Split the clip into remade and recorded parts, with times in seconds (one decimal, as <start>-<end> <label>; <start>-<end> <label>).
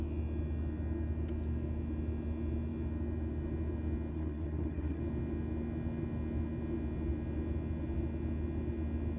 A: 0.0-4.1 recorded; 4.1-5.0 remade; 5.0-9.2 recorded